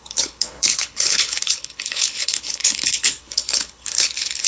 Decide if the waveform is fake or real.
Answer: fake